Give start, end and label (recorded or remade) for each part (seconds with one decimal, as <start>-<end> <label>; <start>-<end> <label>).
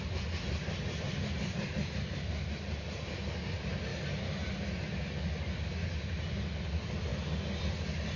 0.0-8.2 recorded